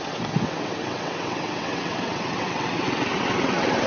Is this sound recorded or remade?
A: remade